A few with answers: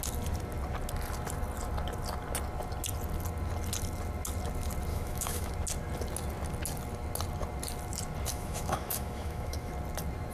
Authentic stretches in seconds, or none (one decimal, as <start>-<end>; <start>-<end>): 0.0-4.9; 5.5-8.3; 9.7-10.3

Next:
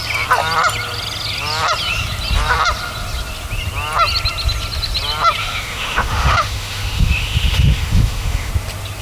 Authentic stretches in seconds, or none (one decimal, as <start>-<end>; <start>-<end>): 0.0-5.4; 8.5-9.0

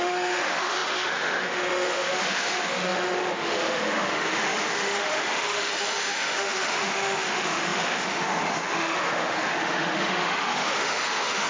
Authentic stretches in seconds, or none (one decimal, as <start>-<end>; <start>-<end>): none

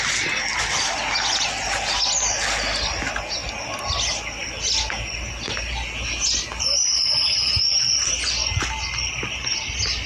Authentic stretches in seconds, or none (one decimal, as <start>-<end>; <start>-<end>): 0.0-10.1